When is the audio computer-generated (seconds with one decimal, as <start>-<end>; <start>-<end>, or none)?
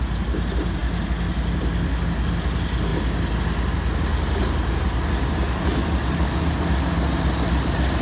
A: none